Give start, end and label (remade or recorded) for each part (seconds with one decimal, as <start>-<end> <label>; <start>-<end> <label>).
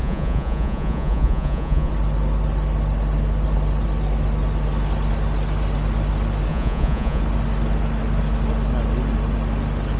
0.0-1.9 remade; 1.9-6.5 recorded; 6.5-7.2 remade; 7.2-10.0 recorded